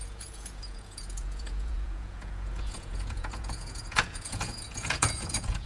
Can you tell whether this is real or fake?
fake